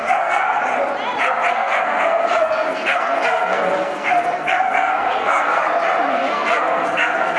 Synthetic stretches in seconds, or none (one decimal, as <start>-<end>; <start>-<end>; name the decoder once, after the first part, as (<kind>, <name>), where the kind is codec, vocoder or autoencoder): 0.0-0.6 (codec, SNAC); 1.5-5.6; 6.1-7.4

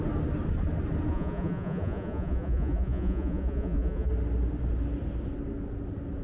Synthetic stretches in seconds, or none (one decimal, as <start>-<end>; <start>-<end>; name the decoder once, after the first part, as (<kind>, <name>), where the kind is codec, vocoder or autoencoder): 1.1-4.1 (vocoder, Vocos)

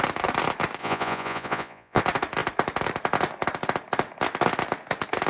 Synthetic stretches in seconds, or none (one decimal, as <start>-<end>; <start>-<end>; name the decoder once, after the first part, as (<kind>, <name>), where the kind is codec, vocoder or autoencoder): 0.8-2.0 (vocoder, Vocos)

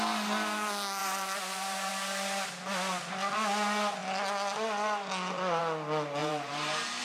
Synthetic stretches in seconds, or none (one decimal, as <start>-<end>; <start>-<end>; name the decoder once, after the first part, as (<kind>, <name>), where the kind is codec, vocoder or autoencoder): 1.0-1.9 (vocoder, BigVGAN v2); 6.2-7.0

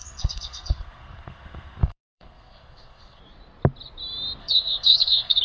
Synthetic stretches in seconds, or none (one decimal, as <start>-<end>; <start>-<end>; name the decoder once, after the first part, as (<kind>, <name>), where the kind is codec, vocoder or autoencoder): 0.0-3.2 (codec, SNAC); 4.4-5.4

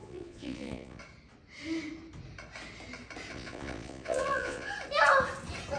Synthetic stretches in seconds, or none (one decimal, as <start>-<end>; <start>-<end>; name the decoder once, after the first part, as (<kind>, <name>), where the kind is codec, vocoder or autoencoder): 0.0-1.0 (vocoder, Vocos); 3.3-4.7